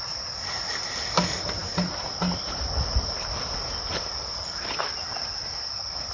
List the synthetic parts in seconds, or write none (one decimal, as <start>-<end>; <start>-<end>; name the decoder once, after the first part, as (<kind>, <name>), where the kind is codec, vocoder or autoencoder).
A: none